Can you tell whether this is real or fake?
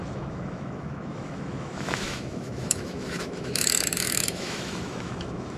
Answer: fake